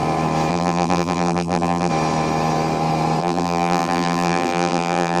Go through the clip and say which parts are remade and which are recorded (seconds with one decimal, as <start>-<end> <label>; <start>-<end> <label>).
0.0-0.5 recorded; 0.5-1.9 remade; 1.9-3.2 recorded; 3.2-5.2 remade